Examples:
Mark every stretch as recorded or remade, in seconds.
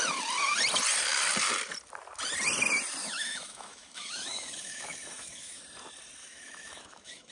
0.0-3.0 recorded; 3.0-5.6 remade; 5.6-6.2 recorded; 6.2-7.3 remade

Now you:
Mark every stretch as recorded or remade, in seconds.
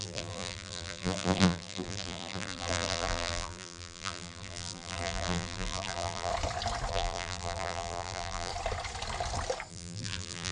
0.0-6.3 remade; 6.3-6.9 recorded; 6.9-8.5 remade; 8.5-9.7 recorded; 9.7-10.5 remade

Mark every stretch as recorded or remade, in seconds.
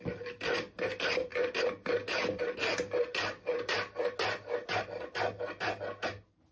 0.0-6.5 recorded